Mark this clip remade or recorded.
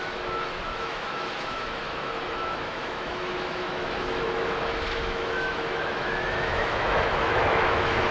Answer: remade